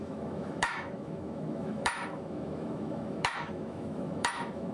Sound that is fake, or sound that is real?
fake